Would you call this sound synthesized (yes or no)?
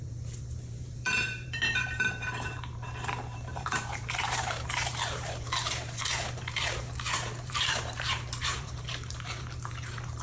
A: yes